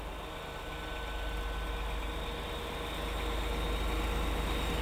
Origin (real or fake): real